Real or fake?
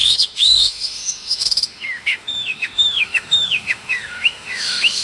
fake